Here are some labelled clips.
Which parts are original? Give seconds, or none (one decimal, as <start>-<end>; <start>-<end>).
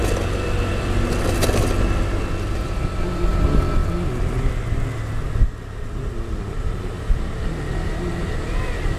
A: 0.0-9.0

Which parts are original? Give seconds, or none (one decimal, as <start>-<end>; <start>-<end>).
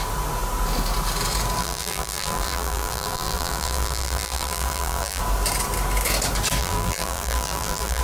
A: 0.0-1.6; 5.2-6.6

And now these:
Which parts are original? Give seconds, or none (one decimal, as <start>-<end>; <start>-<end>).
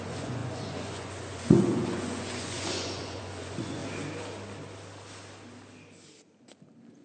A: 3.8-7.0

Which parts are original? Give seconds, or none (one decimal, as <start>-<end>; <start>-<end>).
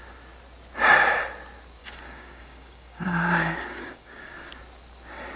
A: 0.0-1.8; 4.5-5.4